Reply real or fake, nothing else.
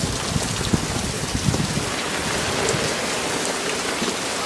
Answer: real